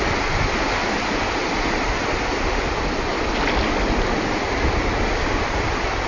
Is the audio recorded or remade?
recorded